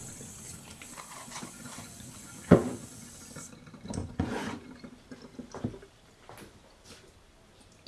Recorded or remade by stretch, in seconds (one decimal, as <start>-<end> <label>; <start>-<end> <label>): 0.0-1.2 recorded; 1.2-3.1 remade; 3.1-4.0 recorded; 4.0-4.7 remade; 4.7-7.9 recorded